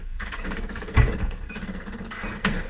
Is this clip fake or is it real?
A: fake